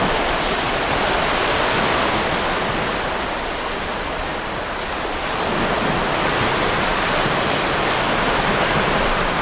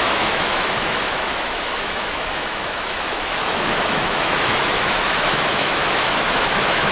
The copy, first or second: second